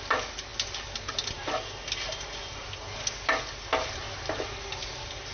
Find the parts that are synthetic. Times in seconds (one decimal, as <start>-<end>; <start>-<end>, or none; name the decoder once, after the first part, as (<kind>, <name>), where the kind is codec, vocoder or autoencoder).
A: none